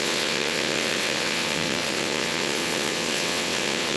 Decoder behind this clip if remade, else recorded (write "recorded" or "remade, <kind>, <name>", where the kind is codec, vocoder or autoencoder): remade, vocoder, WaveNeXt